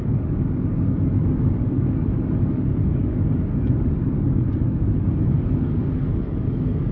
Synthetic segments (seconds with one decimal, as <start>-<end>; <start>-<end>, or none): 0.0-6.9